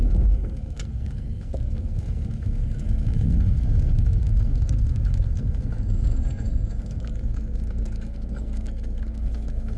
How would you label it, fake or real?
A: fake